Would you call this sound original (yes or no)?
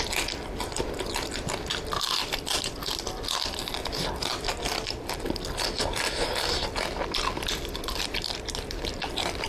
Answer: yes